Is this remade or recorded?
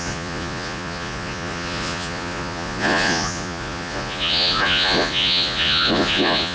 remade